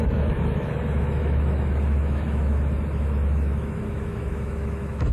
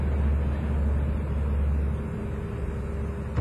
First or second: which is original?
second